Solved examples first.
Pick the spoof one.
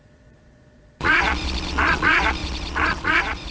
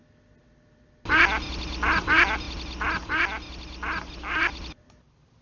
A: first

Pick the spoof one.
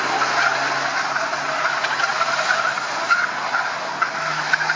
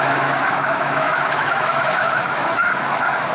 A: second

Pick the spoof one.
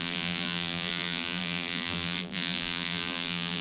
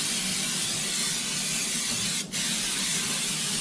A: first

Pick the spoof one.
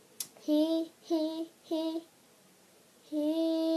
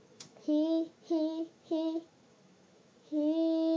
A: second